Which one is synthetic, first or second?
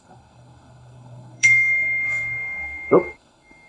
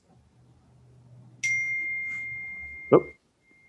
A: first